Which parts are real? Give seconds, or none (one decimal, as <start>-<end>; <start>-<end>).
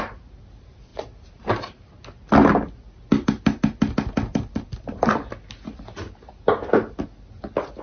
0.0-7.8